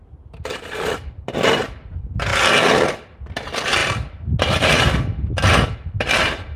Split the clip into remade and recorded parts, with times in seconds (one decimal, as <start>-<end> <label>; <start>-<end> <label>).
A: 0.0-6.6 recorded